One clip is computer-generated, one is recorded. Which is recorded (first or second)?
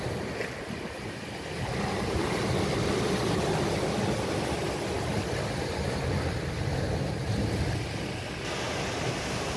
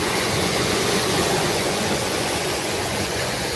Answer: first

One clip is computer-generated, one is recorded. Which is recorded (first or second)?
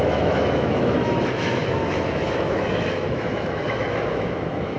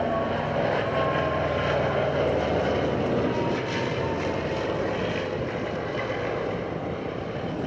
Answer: second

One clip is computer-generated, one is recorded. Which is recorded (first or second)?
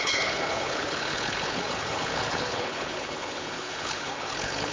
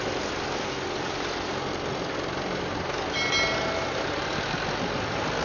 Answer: second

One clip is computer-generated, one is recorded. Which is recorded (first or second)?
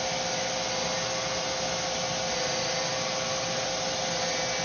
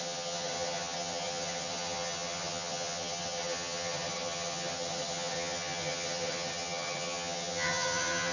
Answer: first